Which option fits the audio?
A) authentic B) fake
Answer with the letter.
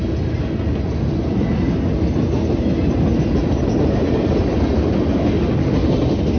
A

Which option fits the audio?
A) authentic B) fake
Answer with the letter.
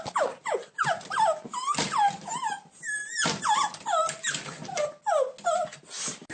A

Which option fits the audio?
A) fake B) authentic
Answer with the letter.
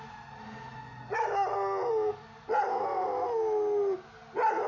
B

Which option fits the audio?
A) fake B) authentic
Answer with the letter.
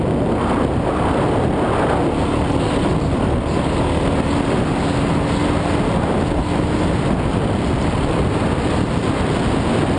B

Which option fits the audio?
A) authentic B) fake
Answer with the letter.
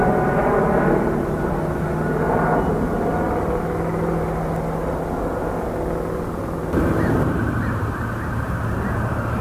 A